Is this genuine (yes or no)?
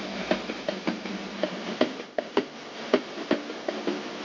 yes